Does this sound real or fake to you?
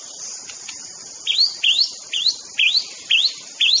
real